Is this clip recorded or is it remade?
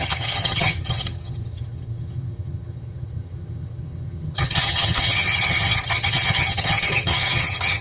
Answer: remade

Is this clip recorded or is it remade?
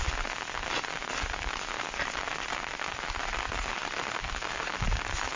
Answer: recorded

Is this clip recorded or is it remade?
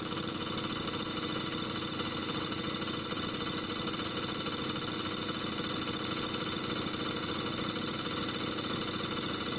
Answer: recorded